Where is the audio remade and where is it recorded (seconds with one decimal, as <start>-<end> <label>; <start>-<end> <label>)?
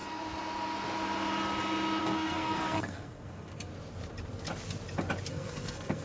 0.0-2.0 recorded; 2.0-3.7 remade; 3.7-5.3 recorded; 5.3-6.0 remade